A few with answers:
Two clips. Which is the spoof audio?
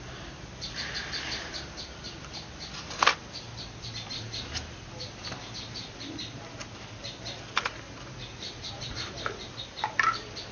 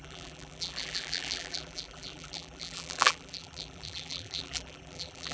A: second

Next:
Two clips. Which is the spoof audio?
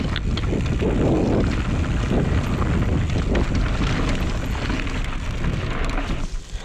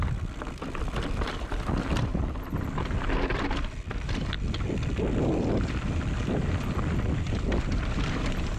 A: second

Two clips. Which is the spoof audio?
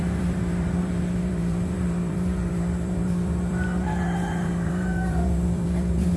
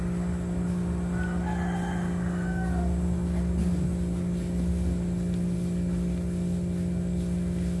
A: first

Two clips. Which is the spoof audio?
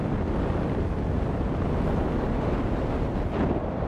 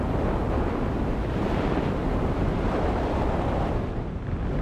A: second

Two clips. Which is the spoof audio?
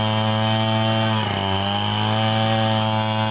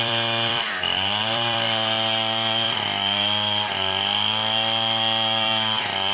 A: second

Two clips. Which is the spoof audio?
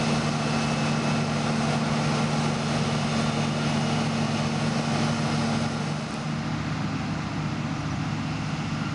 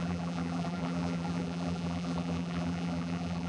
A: second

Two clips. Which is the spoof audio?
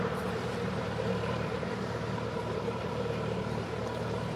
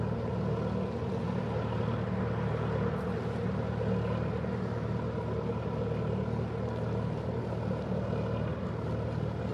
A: first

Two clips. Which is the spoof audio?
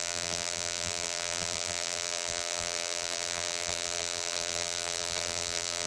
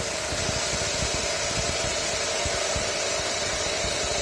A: first